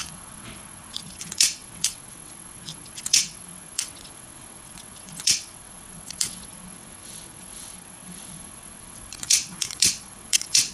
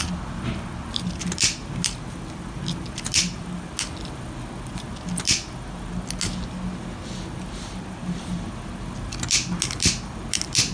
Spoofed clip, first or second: first